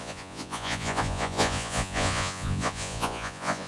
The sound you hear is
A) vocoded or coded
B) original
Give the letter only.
A